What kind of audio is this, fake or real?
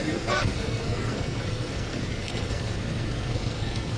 fake